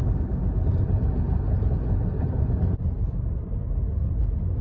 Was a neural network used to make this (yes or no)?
no